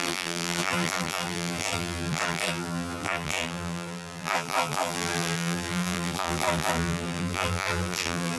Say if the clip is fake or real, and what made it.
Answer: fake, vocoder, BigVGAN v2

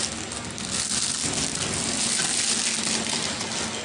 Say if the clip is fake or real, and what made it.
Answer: real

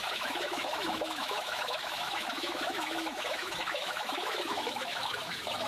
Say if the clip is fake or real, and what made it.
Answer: fake, autoencoder, DAC-VAE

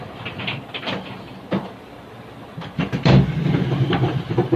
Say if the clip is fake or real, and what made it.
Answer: fake, vocoder, BigVGAN v2